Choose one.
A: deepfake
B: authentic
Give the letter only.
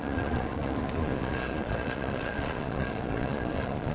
A